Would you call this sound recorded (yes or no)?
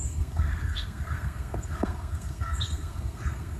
no